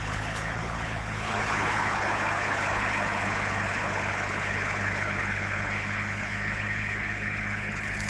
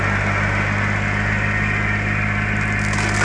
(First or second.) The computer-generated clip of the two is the first